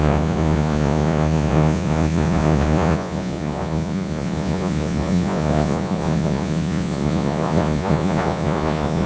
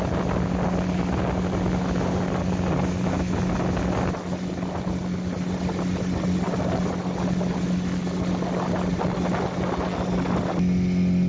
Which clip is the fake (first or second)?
first